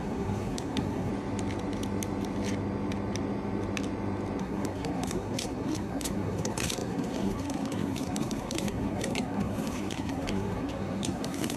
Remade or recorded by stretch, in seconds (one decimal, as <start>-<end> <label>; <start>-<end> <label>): 0.0-1.1 remade; 1.1-4.4 recorded; 4.4-11.6 remade